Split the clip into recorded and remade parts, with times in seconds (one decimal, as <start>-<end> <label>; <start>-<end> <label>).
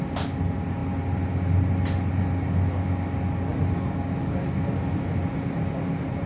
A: 0.0-6.3 recorded